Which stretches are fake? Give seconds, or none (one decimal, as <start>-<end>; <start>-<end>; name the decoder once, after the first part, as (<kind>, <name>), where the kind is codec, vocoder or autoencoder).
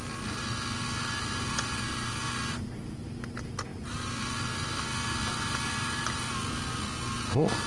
none